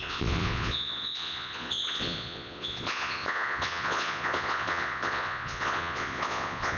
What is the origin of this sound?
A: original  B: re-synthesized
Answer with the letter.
B